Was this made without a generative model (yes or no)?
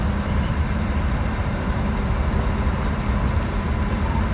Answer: yes